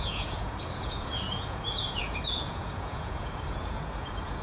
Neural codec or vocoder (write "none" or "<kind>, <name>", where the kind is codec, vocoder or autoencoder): vocoder, Vocos